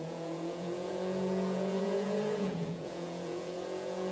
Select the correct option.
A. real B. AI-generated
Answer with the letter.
B